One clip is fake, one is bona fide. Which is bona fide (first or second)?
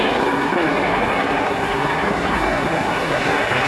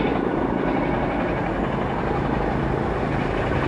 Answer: second